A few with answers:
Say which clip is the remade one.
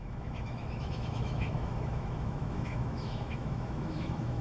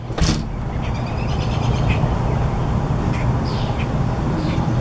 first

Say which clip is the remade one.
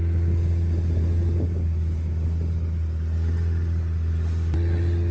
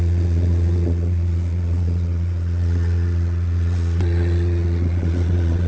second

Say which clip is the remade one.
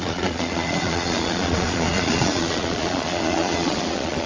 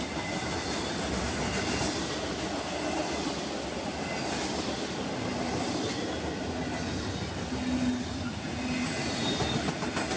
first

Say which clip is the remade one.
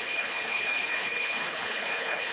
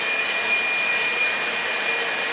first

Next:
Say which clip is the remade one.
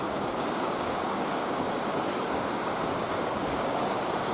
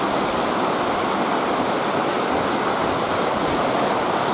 first